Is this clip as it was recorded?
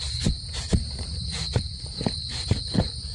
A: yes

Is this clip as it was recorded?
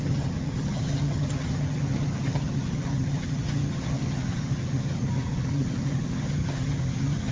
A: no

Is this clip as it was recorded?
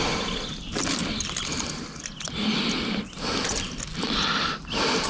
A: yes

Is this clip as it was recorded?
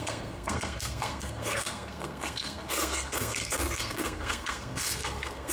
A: no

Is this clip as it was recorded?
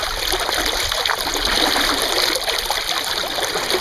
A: yes